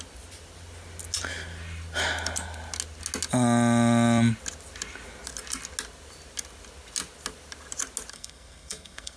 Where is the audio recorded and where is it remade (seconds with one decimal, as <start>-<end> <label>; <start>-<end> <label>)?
0.0-8.1 recorded; 8.1-9.2 remade